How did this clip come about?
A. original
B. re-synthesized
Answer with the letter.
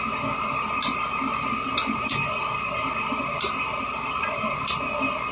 A